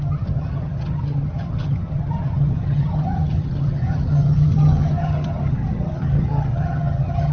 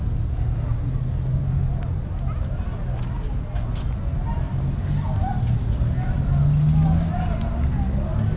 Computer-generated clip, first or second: first